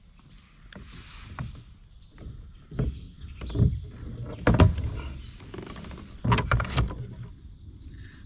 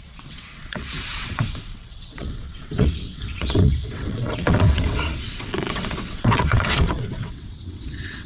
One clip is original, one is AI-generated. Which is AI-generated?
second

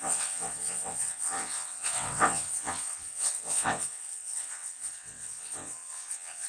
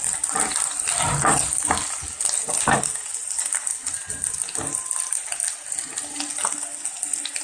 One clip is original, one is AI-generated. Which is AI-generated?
first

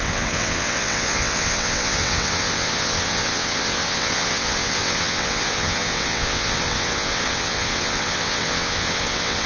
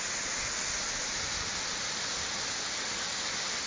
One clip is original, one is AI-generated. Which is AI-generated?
first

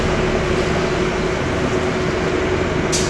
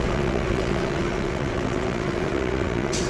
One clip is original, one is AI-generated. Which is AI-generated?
second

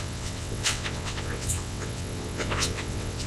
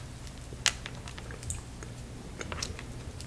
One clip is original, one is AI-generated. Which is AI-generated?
first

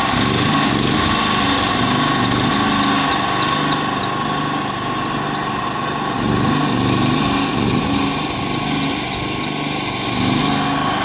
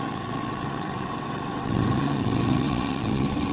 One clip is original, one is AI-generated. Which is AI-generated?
second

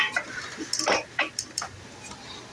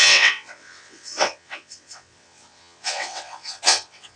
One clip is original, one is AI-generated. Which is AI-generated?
second